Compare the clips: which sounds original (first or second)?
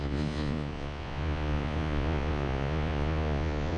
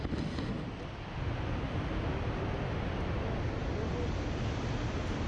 second